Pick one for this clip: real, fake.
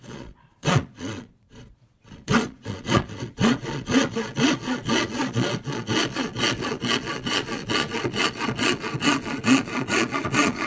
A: fake